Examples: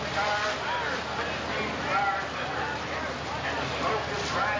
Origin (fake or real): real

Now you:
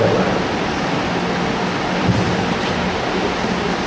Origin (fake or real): real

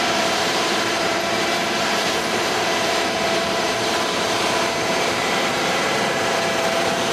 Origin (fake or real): fake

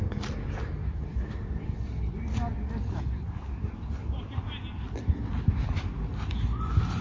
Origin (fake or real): fake